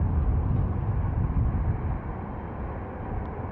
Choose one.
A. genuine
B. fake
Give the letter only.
A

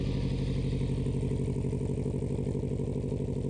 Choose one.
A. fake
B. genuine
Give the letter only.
B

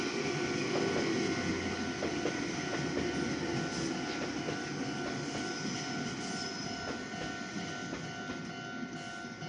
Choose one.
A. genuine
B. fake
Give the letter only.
A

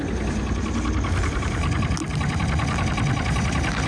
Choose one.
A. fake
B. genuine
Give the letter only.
B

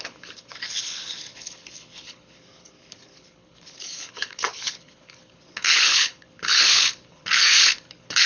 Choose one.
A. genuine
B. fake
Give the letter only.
B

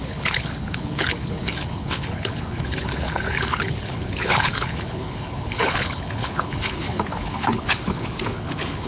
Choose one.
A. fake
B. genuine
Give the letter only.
A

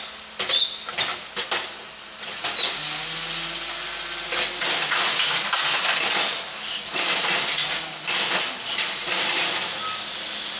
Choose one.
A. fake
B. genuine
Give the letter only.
B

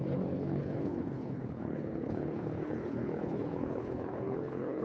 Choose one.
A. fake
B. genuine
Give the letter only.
A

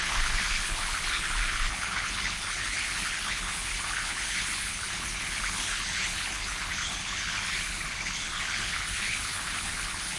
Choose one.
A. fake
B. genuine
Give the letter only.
A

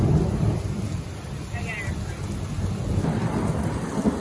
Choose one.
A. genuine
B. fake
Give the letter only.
A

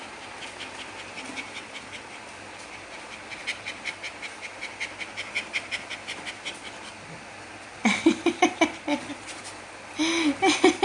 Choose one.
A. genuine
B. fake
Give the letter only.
A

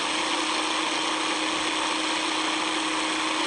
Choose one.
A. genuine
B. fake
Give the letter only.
A